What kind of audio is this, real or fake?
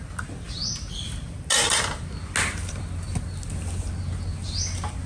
real